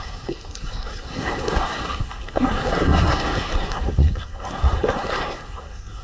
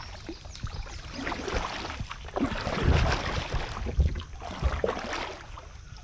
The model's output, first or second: first